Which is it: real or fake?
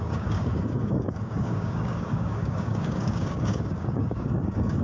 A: fake